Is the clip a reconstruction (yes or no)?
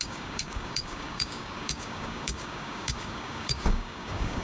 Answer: yes